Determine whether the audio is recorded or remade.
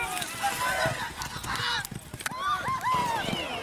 recorded